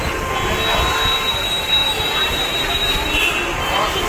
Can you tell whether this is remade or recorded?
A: recorded